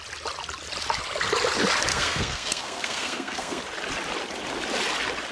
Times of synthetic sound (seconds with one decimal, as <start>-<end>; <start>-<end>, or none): 1.9-3.6